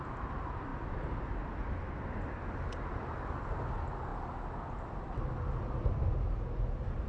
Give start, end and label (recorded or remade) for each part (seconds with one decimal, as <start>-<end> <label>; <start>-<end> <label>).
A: 0.0-7.1 recorded